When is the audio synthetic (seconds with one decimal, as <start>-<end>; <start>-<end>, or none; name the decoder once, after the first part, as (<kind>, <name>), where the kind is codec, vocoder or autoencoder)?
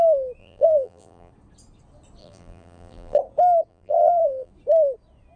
0.4-1.3 (vocoder, BigVGAN v2); 2.2-3.2; 3.7-4.5